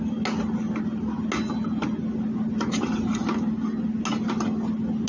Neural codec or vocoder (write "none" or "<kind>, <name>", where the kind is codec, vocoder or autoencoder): none